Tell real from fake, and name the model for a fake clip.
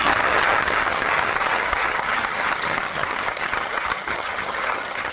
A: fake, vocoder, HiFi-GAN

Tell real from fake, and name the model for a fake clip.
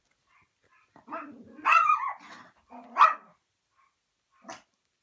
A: real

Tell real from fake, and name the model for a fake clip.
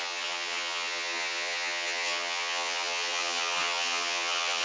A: fake, vocoder, HiFi-GAN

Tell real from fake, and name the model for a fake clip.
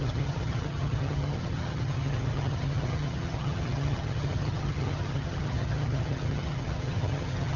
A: fake, vocoder, HiFi-GAN